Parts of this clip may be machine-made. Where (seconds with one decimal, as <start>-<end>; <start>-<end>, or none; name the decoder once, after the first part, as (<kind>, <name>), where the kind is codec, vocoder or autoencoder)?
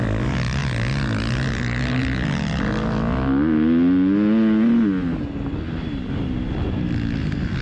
none